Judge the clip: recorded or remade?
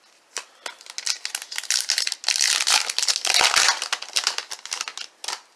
recorded